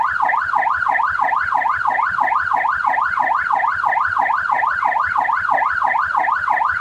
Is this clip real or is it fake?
real